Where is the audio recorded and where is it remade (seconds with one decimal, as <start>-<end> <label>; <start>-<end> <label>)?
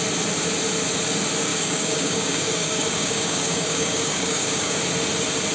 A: 0.0-1.5 recorded; 1.5-4.8 remade; 4.8-5.5 recorded